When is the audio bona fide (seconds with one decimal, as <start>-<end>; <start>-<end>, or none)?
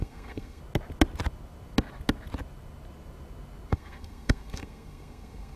0.6-3.7